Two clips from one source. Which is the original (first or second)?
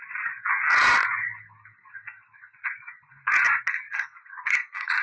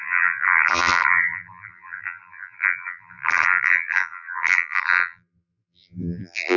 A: first